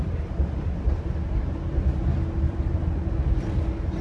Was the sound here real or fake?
real